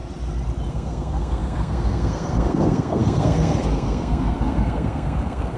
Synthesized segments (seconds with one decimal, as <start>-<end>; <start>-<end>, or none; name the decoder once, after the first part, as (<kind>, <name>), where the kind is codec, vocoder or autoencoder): 0.7-5.6 (codec, SNAC)